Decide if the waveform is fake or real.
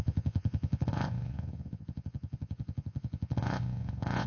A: fake